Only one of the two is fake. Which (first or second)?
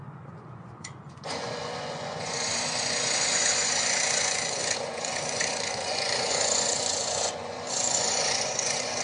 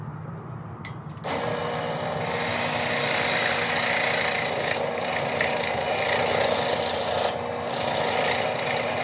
first